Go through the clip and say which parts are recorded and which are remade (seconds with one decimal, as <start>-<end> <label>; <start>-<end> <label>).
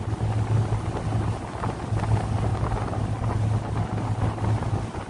0.0-5.1 recorded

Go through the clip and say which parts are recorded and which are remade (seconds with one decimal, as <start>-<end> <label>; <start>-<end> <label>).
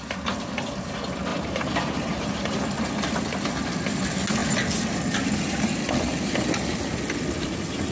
0.0-1.3 recorded; 1.3-2.7 remade; 2.7-7.9 recorded